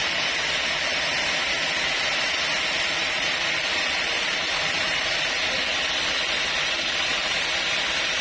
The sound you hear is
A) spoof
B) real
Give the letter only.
B